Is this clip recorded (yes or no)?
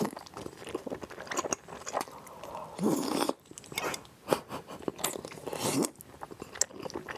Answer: yes